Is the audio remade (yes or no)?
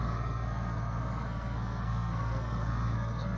yes